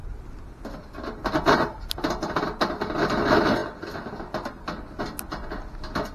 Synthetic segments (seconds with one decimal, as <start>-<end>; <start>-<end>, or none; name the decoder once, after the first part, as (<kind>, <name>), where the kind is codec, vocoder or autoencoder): none